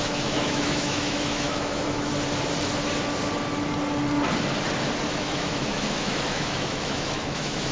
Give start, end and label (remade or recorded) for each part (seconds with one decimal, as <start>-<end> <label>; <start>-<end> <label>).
0.0-2.1 remade; 2.1-5.1 recorded; 5.1-7.7 remade